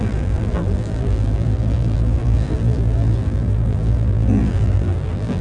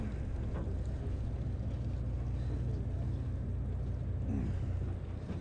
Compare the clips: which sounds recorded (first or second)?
second